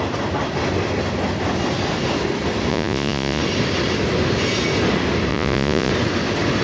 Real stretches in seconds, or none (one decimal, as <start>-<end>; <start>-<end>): 0.0-2.7; 3.4-5.3; 5.9-6.6